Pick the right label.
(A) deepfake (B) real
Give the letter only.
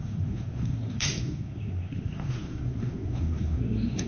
A